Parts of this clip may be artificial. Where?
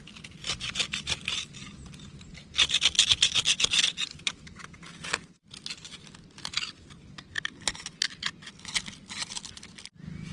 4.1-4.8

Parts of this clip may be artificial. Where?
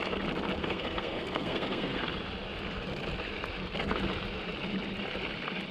0.6-2.0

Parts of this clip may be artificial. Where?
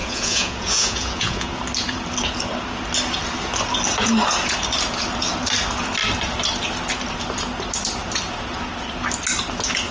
0.0-1.6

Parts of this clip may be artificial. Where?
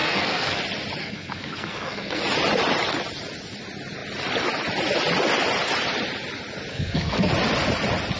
0.0-0.6; 1.0-2.2; 6.7-7.3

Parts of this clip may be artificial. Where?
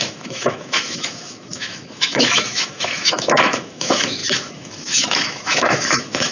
0.0-6.3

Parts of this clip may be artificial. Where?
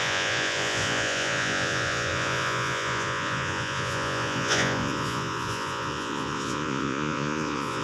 0.0-7.8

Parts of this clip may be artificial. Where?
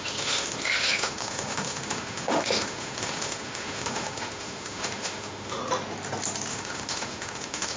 0.0-5.6; 6.5-7.8